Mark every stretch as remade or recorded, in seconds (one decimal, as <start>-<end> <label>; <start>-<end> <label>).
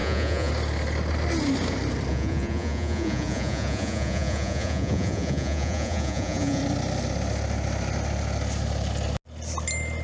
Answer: 0.0-0.5 remade; 0.5-2.1 recorded; 2.1-6.6 remade; 6.6-10.0 recorded